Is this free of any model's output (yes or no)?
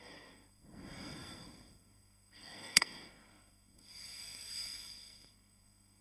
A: no